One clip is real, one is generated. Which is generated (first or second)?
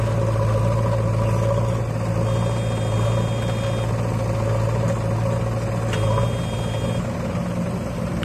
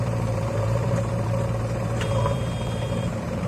second